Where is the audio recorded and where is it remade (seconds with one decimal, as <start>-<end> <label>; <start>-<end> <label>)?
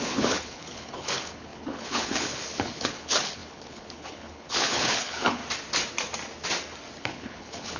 0.0-5.4 remade; 5.4-7.0 recorded; 7.0-7.8 remade